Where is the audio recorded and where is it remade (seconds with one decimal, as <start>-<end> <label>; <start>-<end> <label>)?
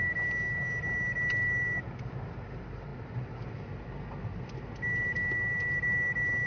0.0-6.5 recorded